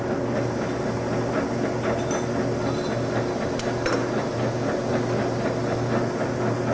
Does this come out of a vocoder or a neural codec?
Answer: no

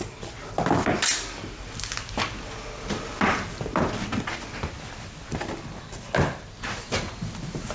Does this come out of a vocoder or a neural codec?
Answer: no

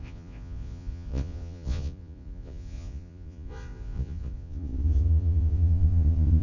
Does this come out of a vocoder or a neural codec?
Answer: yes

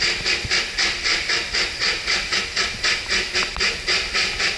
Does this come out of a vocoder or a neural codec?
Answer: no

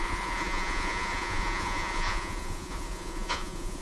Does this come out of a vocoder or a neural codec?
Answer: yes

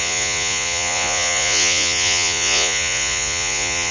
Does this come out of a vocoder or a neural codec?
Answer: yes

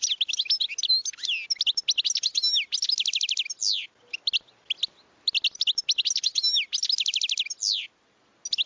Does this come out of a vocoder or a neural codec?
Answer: no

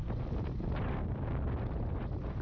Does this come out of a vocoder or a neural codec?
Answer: no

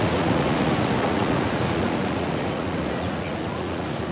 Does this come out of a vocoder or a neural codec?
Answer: yes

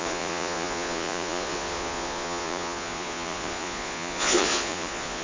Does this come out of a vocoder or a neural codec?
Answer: yes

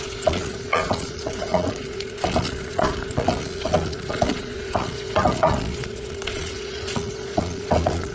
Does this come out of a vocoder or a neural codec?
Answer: yes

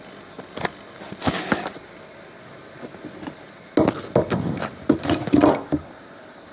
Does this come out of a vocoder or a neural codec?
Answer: no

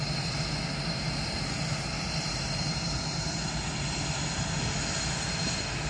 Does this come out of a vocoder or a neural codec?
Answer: no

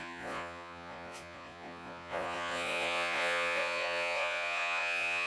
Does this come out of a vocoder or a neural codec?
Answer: yes